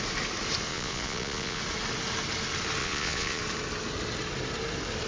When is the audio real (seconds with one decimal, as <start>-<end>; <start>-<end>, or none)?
0.0-0.7; 1.6-2.8; 3.4-5.1